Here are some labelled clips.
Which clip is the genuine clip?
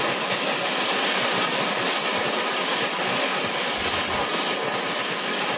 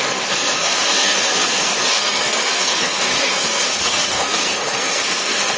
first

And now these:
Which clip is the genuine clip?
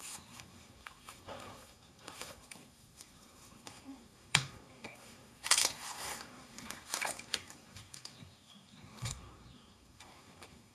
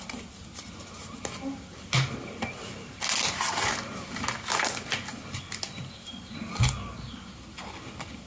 second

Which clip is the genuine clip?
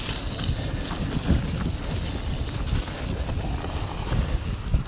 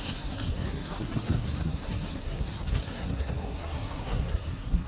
first